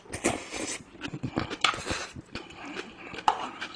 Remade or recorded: recorded